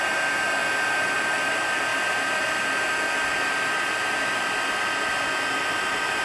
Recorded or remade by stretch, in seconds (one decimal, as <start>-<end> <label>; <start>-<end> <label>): 0.0-0.6 remade; 0.6-1.1 recorded; 1.1-1.9 remade; 1.9-5.6 recorded; 5.6-6.2 remade